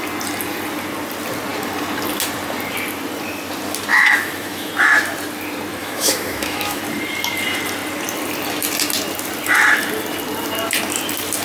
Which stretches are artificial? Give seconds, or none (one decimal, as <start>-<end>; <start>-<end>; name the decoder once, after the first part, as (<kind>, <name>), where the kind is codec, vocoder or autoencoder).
3.9-4.7 (autoencoder, DAC-VAE); 5.8-6.8